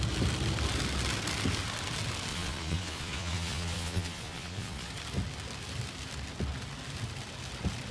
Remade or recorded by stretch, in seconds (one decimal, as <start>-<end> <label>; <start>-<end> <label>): 0.0-2.3 recorded; 2.3-4.9 remade; 4.9-7.9 recorded